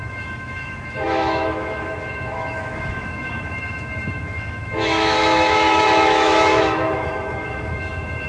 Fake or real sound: fake